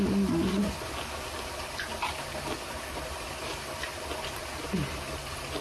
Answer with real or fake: real